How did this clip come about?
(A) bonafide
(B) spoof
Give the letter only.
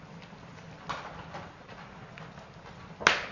A